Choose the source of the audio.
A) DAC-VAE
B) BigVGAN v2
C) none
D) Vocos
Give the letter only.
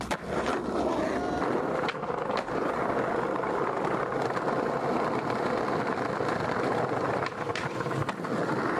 C